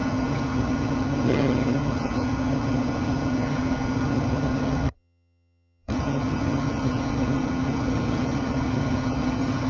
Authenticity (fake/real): fake